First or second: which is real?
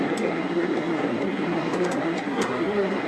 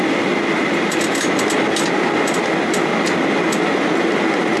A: second